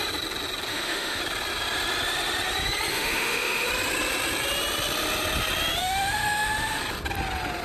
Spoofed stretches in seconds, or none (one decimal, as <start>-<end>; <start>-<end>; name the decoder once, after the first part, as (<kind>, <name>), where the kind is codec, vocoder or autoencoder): 0.7-1.2 (autoencoder, DAC-VAE); 2.9-3.7; 5.8-6.8